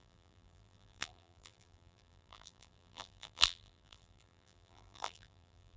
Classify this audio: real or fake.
fake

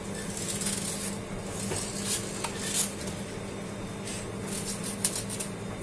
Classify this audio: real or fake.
real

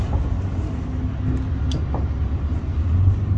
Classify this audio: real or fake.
real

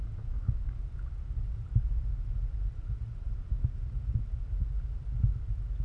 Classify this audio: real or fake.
real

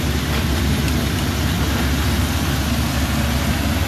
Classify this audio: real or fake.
real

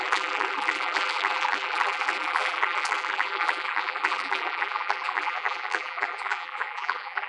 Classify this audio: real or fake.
fake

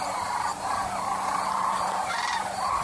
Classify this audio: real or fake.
fake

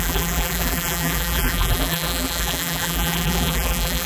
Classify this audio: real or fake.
fake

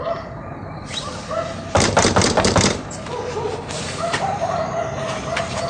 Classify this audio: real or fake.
fake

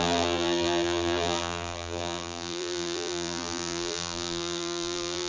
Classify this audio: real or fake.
fake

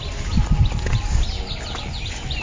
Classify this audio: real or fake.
real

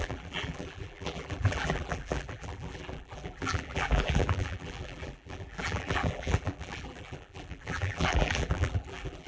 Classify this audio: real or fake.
fake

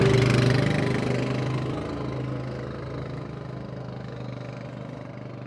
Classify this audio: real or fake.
real